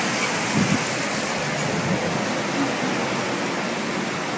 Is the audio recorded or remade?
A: recorded